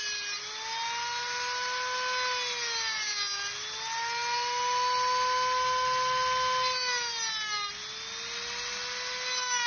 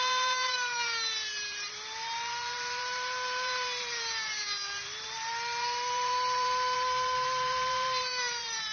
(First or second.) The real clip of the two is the first